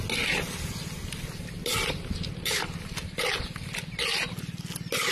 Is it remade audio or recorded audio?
recorded